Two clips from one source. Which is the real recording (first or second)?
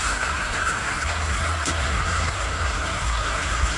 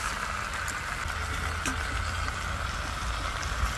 second